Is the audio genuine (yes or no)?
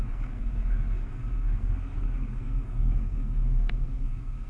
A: no